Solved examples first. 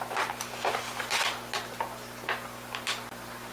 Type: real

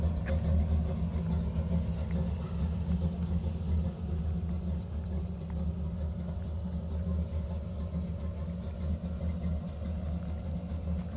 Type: real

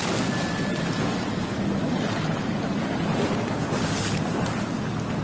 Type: real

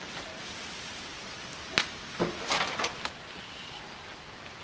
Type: real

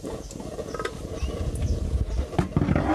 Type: real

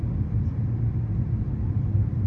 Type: fake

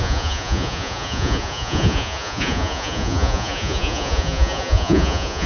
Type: fake